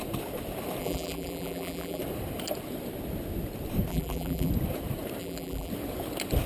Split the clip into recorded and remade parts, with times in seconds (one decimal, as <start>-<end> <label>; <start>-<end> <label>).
0.0-0.8 recorded; 0.8-2.0 remade; 2.0-3.9 recorded; 3.9-4.5 remade; 4.5-5.2 recorded; 5.2-5.7 remade; 5.7-6.5 recorded